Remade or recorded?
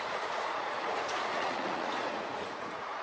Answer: remade